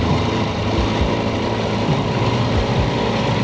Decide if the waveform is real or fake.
fake